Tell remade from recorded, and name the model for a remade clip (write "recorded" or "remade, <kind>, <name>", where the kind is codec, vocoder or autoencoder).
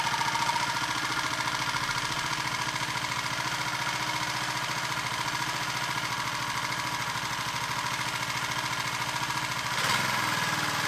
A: recorded